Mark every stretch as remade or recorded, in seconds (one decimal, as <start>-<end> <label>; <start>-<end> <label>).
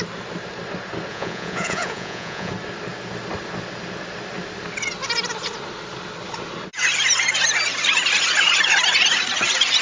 0.0-1.1 recorded; 1.1-2.5 remade; 2.5-9.8 recorded